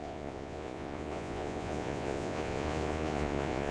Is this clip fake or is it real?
fake